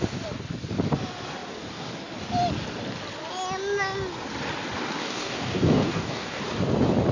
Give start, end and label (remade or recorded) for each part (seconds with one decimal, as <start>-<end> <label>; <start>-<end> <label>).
0.0-5.0 recorded; 5.0-6.4 remade; 6.4-7.1 recorded